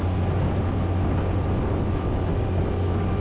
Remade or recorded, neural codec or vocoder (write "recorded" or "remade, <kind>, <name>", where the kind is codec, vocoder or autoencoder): recorded